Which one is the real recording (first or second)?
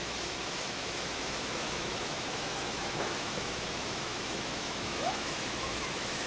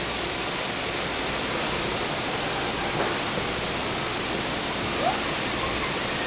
second